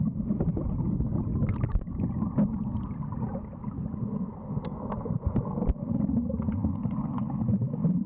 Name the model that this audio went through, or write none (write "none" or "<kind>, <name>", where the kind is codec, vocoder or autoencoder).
none